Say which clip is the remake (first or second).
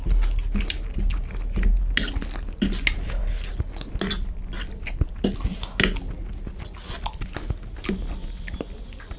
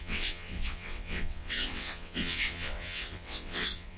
second